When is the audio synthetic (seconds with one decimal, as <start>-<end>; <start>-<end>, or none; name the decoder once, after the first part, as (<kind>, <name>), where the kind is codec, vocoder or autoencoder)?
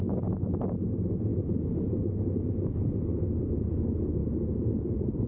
none